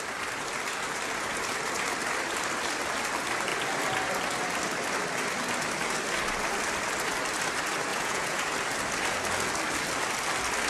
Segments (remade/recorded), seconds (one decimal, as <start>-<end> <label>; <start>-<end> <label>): 0.0-7.9 recorded; 7.9-8.4 remade; 8.4-10.7 recorded